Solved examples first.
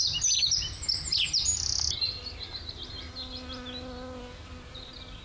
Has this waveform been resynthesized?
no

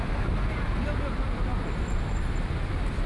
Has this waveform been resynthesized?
no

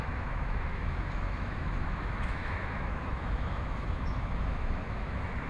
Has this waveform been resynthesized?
yes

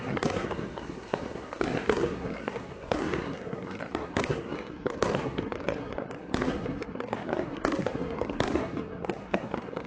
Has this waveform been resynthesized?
yes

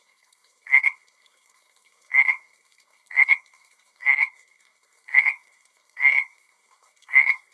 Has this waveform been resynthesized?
yes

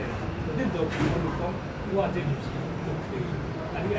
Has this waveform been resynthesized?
no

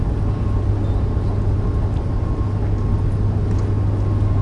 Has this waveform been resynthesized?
no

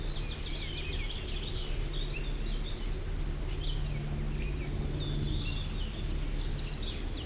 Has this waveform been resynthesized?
no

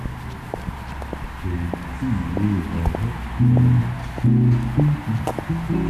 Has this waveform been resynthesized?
no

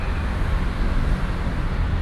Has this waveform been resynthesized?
no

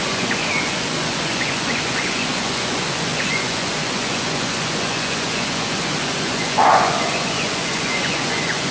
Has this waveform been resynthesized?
yes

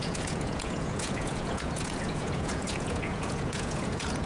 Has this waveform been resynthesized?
yes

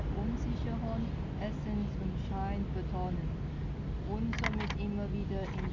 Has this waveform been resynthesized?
no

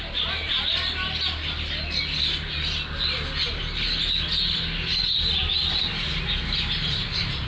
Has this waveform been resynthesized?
no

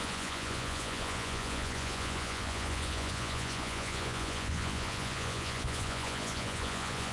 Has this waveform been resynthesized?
yes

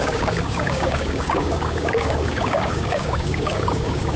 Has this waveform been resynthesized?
yes